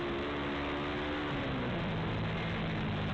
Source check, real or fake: real